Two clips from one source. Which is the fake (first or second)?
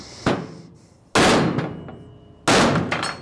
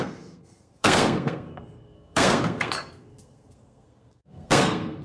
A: second